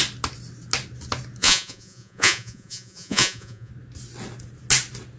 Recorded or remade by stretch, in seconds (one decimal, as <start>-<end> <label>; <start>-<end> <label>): 0.0-1.4 recorded; 1.4-3.7 remade; 3.7-5.2 recorded